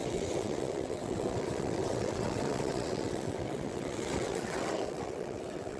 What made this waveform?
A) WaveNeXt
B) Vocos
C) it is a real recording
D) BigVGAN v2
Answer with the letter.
A